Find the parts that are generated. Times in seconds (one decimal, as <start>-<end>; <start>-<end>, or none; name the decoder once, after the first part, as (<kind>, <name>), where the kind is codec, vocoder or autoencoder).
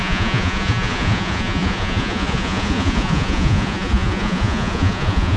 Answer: 0.0-5.4 (vocoder, Vocos)